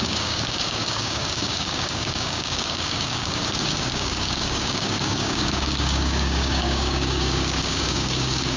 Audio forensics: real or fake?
fake